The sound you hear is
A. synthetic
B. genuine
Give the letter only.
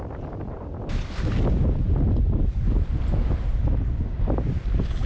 B